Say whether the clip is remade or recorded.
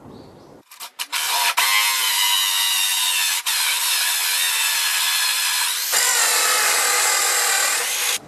recorded